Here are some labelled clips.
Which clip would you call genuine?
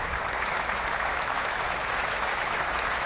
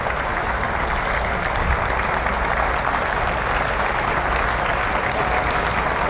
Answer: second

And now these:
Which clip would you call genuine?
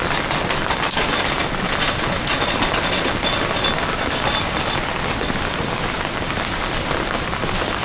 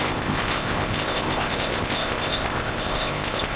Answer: first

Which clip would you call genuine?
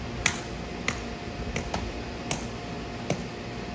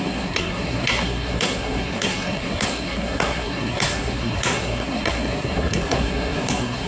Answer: first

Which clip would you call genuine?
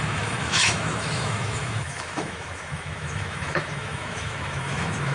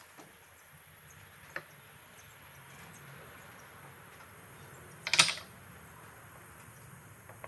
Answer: second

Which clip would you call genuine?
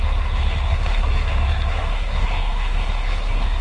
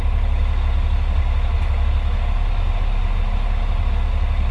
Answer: second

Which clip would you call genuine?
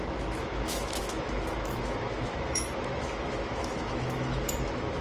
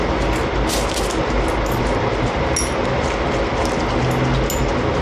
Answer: second